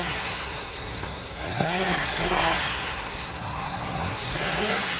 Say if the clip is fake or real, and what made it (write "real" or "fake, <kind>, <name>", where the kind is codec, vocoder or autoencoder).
fake, codec, SNAC